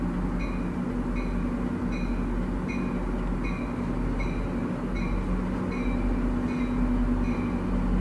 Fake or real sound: real